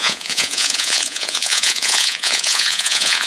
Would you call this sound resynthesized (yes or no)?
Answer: yes